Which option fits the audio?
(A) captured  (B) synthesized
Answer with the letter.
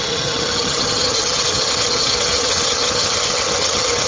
B